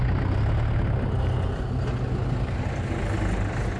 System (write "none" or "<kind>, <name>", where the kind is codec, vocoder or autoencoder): none